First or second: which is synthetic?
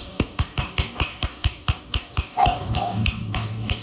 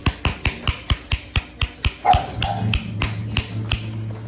first